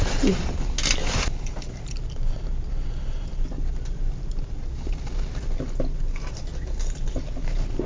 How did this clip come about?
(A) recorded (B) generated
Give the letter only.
A